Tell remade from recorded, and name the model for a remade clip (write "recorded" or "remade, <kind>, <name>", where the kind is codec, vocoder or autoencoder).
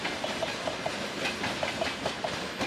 recorded